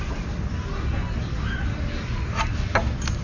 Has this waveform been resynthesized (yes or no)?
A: no